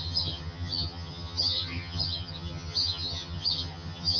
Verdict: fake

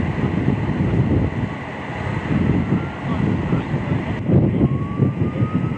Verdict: real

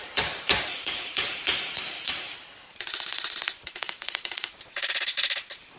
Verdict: fake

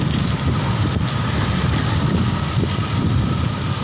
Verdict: real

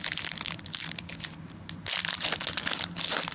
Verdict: real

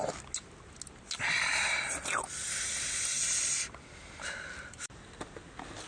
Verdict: real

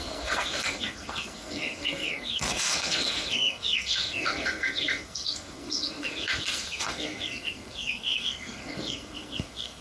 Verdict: fake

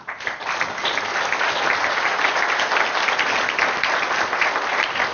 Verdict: real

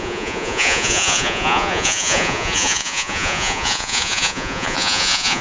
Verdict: fake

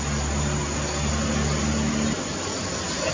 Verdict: real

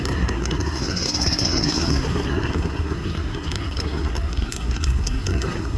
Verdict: fake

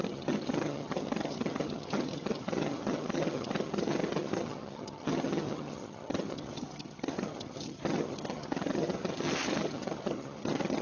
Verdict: fake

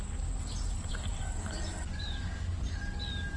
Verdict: real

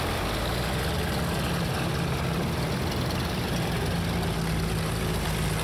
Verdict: real